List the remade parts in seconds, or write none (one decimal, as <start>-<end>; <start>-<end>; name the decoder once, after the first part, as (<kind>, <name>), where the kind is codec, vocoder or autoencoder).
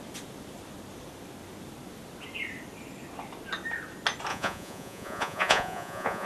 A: 4.3-6.3 (vocoder, Vocos)